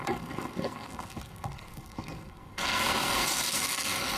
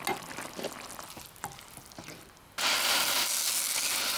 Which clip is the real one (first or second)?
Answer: second